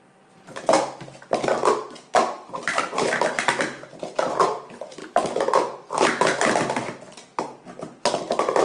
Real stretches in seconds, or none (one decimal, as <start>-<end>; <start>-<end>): 0.0-8.6